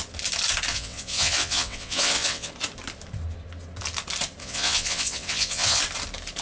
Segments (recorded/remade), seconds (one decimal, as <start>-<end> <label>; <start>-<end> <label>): 0.0-0.7 recorded; 0.7-2.5 remade; 2.5-4.4 recorded; 4.4-5.8 remade; 5.8-6.4 recorded